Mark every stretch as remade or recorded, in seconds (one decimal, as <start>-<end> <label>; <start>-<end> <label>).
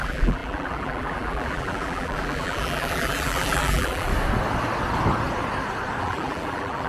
0.0-4.1 remade; 4.1-6.0 recorded; 6.0-6.9 remade